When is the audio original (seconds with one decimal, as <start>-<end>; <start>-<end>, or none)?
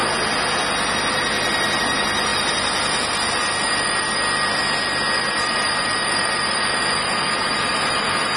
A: 0.0-1.8; 2.3-5.2